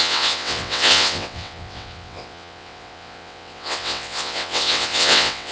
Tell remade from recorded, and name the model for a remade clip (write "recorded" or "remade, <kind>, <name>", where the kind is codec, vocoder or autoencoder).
remade, vocoder, WaveNeXt